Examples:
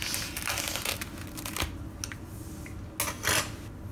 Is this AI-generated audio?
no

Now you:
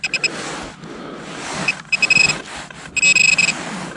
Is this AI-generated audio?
no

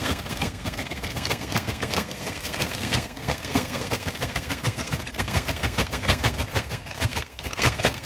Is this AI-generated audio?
yes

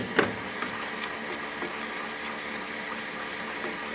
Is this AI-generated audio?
no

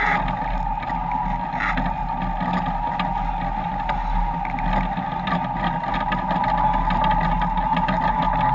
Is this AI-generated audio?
no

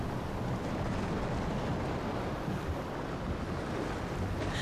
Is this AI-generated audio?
no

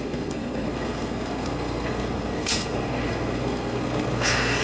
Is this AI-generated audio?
yes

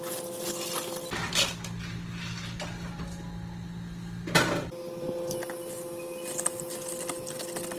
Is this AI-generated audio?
no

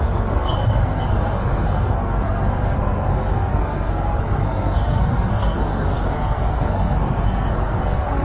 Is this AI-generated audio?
yes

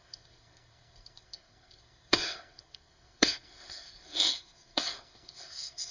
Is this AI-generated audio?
yes